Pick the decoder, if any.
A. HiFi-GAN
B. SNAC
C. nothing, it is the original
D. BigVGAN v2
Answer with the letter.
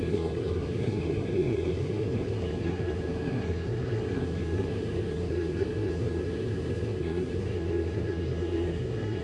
B